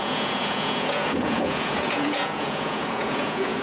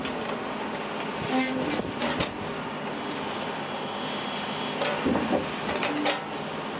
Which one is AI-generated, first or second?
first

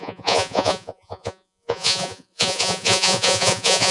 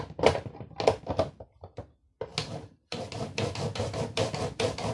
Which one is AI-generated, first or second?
first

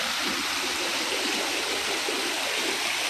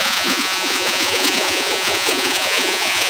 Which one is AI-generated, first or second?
second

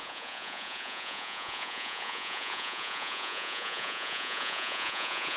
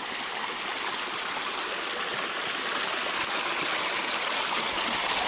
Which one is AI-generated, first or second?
first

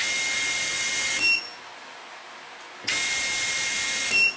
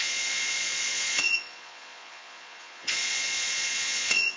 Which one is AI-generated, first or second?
second